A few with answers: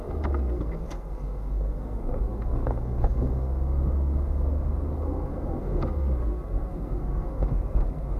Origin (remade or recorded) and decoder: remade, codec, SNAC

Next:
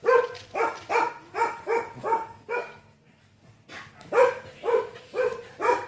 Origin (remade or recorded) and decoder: recorded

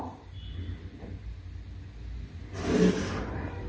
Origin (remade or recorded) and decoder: recorded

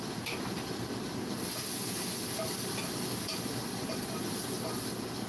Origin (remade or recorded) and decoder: recorded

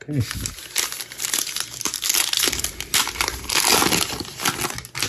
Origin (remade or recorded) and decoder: recorded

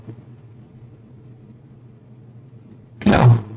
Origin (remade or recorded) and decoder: remade, vocoder, Vocos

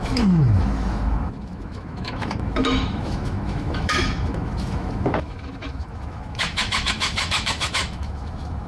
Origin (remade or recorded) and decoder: remade, autoencoder, DAC-VAE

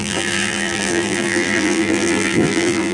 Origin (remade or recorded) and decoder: remade, vocoder, BigVGAN v2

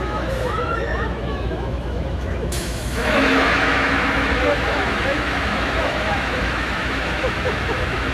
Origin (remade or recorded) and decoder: remade, autoencoder, DAC-VAE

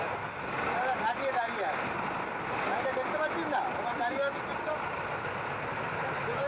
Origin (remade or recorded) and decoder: recorded